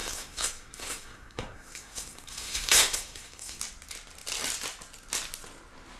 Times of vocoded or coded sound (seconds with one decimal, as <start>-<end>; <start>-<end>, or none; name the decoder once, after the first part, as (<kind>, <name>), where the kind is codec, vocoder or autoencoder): 0.0-3.6 (codec, SNAC)